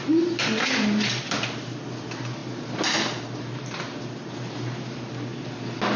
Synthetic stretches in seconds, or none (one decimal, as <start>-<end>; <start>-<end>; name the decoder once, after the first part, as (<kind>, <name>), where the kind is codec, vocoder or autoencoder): none